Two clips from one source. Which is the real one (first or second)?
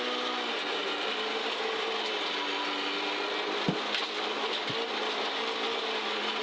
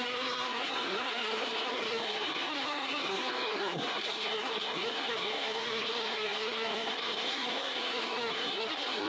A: first